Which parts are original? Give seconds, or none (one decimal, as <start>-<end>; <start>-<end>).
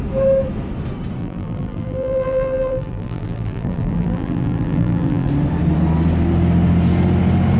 0.0-1.2; 5.3-7.6